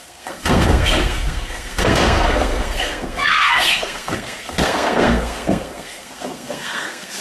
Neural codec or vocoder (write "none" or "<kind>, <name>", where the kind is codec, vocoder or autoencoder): codec, SNAC